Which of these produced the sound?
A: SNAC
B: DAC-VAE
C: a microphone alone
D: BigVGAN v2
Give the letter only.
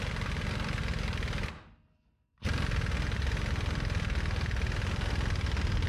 C